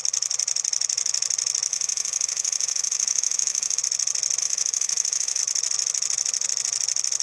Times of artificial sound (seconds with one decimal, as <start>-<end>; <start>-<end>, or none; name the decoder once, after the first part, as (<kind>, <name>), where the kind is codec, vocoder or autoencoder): 1.7-3.8 (autoencoder, DAC-VAE); 4.4-5.4